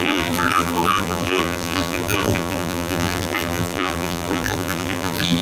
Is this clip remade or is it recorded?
remade